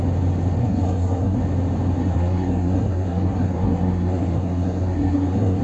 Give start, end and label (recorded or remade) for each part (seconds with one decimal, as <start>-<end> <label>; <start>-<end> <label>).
0.0-0.6 recorded; 0.6-1.4 remade; 1.4-2.0 recorded; 2.0-5.6 remade